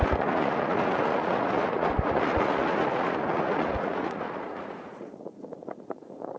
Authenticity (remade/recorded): remade